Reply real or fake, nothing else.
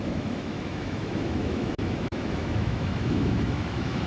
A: fake